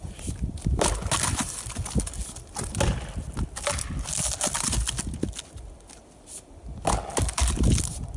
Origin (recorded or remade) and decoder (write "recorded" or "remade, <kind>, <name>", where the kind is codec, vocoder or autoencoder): recorded